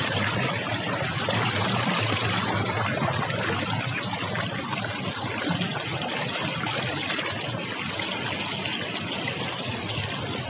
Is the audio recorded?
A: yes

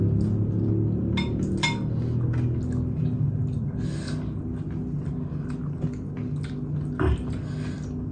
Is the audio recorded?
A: yes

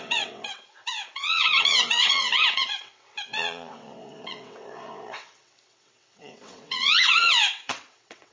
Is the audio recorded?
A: no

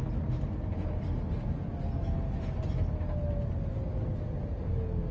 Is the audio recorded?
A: yes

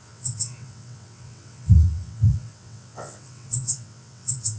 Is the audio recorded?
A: no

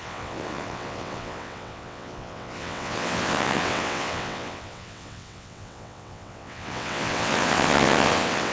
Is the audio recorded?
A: no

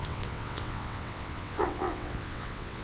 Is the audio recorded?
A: no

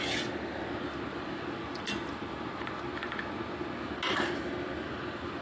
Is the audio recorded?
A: yes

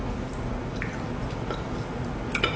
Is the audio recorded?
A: yes